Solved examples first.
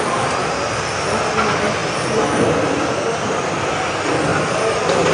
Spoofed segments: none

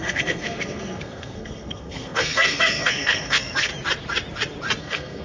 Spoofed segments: 0.0-3.7 (codec, SNAC); 4.8-5.2

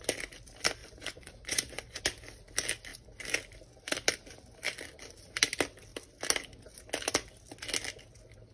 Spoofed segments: 0.8-2.0 (vocoder, Vocos)

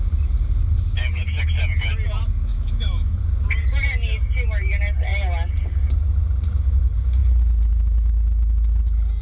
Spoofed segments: 2.5-3.2 (autoencoder, DAC-VAE)

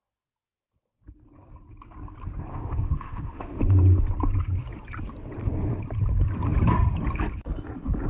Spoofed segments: 2.5-3.6 (autoencoder, DAC-VAE)

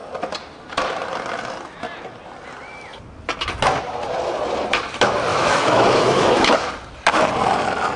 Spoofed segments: 5.3-6.7 (autoencoder, DAC-VAE)

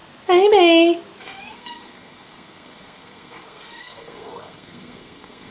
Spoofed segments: 1.2-5.5 (codec, SNAC)

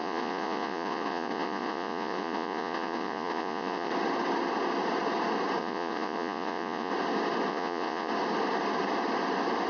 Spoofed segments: 0.0-3.9 (vocoder, Vocos); 5.6-6.9; 7.5-8.1